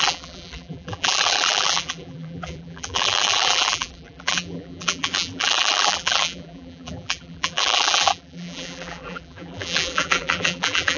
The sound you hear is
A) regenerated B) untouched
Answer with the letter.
A